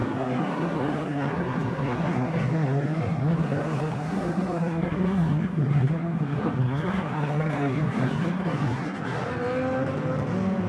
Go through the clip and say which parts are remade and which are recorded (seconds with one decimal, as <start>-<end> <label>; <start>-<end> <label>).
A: 0.0-9.3 remade; 9.3-10.7 recorded